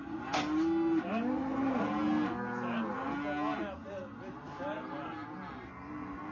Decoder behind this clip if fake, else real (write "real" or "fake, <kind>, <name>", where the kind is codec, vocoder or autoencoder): real